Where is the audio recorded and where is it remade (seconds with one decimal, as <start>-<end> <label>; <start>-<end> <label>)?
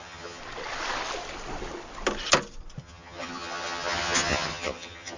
0.0-0.4 remade; 0.4-2.8 recorded; 2.8-5.2 remade